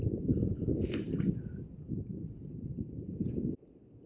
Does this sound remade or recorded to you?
recorded